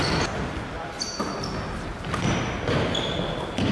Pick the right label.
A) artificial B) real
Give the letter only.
B